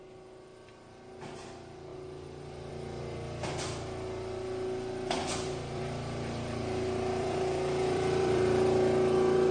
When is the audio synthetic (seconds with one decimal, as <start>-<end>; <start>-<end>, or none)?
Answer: 5.2-9.5

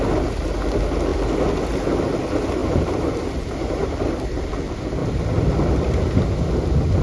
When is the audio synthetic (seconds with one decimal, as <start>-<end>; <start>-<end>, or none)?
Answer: 2.6-4.5

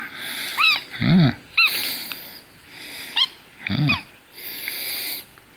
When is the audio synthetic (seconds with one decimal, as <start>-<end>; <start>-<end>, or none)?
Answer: none

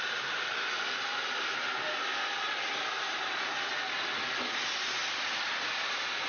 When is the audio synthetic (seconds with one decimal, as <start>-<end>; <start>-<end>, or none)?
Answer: 5.0-6.3

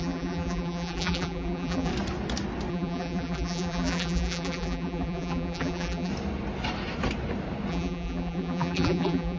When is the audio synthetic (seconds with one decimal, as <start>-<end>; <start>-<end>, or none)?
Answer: 0.0-1.9; 2.7-6.1; 7.7-9.4

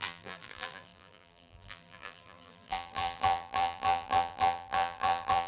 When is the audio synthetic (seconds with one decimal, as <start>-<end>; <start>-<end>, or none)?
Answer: 0.0-5.5